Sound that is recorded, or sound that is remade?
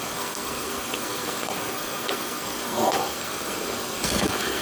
remade